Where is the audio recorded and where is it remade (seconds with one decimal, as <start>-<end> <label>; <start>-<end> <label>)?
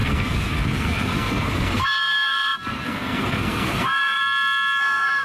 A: 0.0-4.2 remade; 4.2-4.8 recorded; 4.8-5.2 remade